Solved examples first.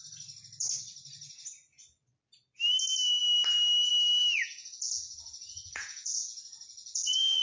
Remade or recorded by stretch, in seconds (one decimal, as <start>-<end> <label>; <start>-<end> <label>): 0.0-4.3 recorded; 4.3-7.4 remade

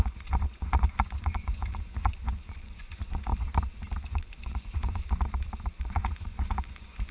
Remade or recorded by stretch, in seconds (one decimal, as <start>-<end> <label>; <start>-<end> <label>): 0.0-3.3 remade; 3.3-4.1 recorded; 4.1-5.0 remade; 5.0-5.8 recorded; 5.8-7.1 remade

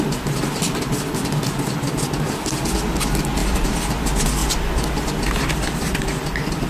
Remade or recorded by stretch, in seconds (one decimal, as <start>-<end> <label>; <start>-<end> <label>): 0.0-6.7 recorded